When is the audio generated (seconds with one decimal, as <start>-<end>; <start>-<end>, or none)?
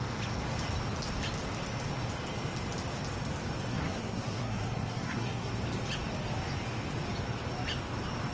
3.7-5.5